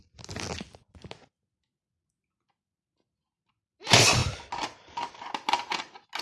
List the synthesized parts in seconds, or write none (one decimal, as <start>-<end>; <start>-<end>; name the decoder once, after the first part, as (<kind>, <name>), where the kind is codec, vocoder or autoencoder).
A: none